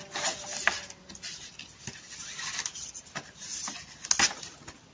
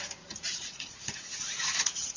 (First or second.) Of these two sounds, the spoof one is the second